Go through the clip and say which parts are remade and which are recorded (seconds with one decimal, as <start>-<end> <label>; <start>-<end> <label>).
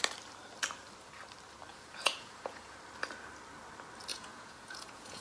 0.0-1.7 recorded; 1.7-2.8 remade; 2.8-4.1 recorded; 4.1-5.2 remade